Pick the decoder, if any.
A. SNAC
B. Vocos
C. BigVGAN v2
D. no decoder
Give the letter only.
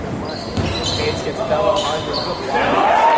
D